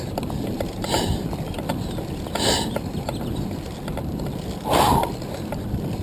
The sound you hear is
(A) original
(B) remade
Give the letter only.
B